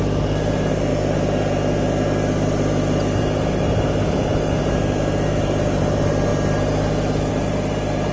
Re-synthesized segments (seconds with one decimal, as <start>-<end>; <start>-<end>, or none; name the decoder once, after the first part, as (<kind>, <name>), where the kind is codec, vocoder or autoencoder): none